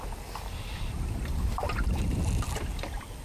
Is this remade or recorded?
recorded